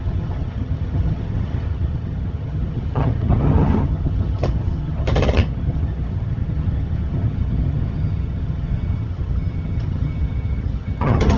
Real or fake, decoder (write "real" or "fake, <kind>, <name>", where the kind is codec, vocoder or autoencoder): fake, vocoder, HiFi-GAN